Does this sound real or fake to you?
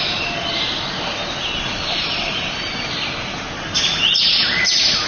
real